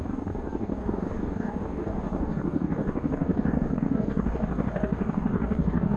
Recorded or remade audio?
remade